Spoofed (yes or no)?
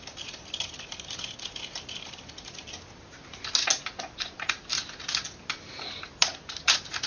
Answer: no